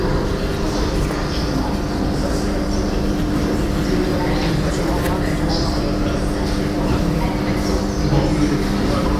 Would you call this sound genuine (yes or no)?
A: yes